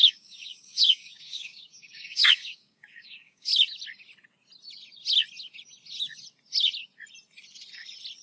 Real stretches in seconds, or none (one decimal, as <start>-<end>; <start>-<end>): 3.5-8.2